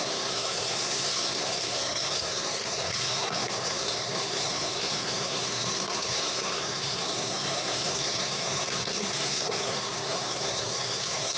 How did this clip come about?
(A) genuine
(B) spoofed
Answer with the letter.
B